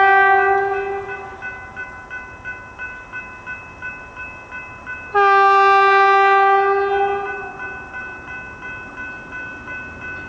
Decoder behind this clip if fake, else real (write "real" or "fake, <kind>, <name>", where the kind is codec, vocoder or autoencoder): real